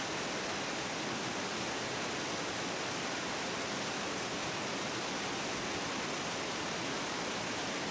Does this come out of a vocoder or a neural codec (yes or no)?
no